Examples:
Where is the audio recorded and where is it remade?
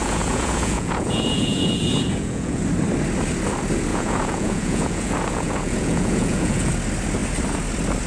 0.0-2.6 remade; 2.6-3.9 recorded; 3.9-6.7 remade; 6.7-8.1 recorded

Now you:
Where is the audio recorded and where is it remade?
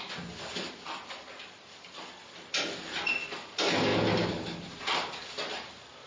0.0-6.1 recorded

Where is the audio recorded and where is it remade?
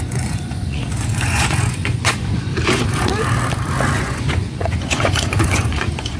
0.0-2.5 remade; 2.5-4.0 recorded; 4.0-6.2 remade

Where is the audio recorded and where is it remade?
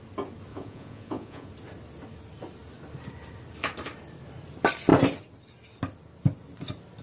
0.0-0.5 recorded; 0.5-1.5 remade; 1.5-7.0 recorded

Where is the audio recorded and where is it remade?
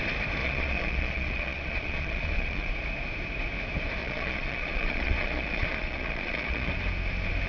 0.0-0.4 recorded; 0.4-2.7 remade; 2.7-4.0 recorded; 4.0-6.7 remade; 6.7-7.5 recorded